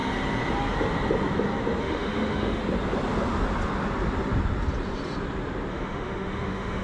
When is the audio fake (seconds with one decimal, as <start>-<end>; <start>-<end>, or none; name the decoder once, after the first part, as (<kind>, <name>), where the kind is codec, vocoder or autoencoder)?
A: 1.8-2.6 (autoencoder, DAC-VAE); 5.7-6.8